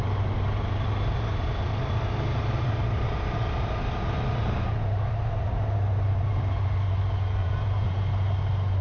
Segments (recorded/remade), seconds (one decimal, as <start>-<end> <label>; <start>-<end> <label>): 0.0-7.4 recorded; 7.4-8.1 remade; 8.1-8.8 recorded